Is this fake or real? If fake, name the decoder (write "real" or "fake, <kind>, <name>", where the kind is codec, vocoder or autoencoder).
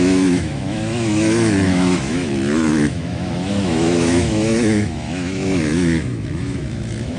fake, autoencoder, DAC-VAE